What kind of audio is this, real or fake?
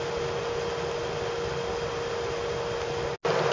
real